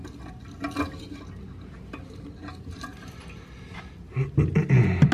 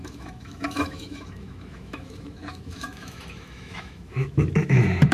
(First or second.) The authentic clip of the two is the first